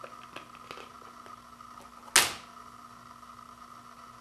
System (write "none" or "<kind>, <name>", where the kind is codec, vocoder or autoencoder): none